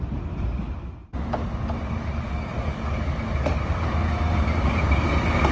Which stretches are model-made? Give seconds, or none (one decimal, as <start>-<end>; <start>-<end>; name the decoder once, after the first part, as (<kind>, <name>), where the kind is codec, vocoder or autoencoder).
none